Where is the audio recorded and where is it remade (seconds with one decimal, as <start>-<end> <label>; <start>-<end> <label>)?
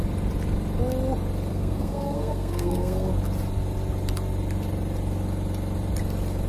0.0-1.5 recorded; 1.5-3.1 remade; 3.1-6.5 recorded